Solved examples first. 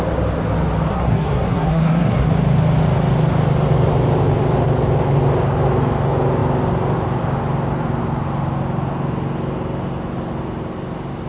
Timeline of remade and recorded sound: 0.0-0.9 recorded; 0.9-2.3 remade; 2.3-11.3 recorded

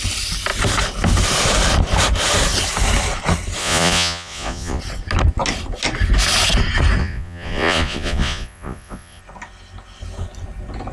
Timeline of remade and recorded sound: 0.0-3.6 recorded; 3.6-4.8 remade; 4.8-7.0 recorded; 7.0-9.2 remade; 9.2-10.9 recorded